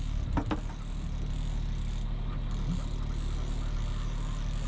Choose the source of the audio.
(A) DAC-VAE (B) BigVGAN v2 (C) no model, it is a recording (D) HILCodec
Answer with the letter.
C